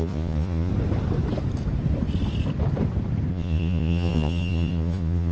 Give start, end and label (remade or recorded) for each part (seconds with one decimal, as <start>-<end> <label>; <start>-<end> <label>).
0.0-0.7 remade; 0.7-3.3 recorded; 3.3-5.3 remade